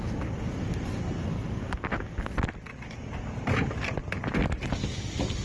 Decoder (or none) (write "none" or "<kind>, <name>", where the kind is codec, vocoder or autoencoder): none